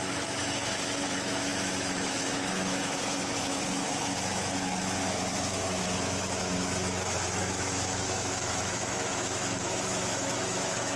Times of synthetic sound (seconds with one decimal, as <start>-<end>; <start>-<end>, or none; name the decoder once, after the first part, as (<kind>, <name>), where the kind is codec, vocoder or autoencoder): 0.0-11.0 (autoencoder, DAC-VAE)